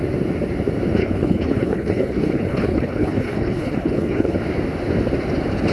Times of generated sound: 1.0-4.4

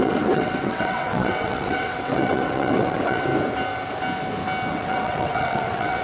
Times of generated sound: 0.0-3.3; 4.7-6.0

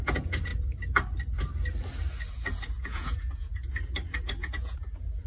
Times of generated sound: 0.0-0.5; 2.6-3.5; 4.3-5.3

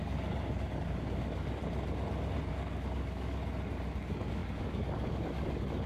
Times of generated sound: 0.0-1.6; 2.5-3.4; 3.9-5.9

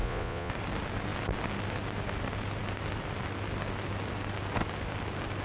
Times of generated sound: 0.0-0.5